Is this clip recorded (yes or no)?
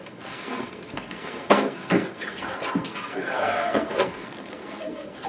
no